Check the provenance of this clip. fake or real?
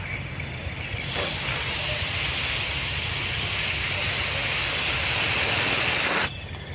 real